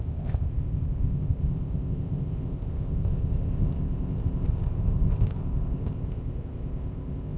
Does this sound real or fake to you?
fake